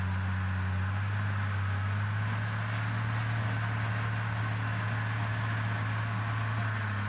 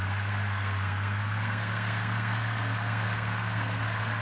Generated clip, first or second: second